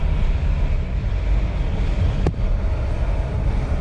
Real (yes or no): yes